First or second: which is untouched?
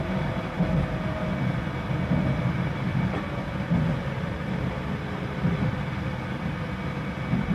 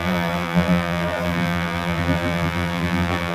first